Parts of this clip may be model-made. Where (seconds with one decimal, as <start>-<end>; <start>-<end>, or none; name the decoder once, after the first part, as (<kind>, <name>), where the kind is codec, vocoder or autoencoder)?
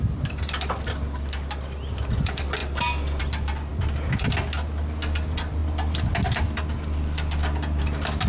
none